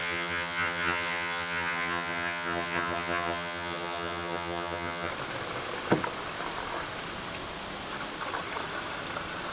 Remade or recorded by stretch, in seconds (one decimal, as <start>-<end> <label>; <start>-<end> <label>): 0.0-5.1 remade; 5.1-9.5 recorded